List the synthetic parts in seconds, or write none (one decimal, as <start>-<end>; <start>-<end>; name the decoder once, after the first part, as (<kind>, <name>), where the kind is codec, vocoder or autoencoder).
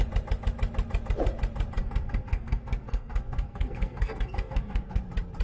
1.8-5.0 (codec, SNAC)